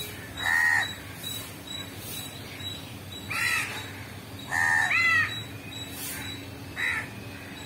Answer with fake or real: real